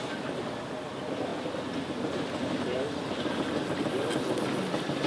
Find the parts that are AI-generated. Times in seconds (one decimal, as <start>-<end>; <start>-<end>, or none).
none